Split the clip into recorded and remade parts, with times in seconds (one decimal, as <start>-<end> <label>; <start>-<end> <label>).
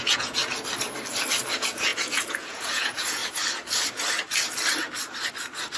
0.0-0.4 remade; 0.4-1.5 recorded; 1.5-3.2 remade; 3.2-5.8 recorded